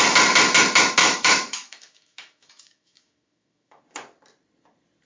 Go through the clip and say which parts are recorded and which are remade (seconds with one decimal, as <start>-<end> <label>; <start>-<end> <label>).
0.0-1.0 recorded; 1.0-3.8 remade; 3.8-5.1 recorded